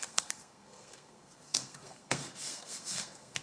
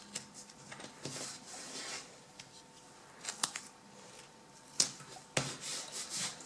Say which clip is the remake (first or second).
first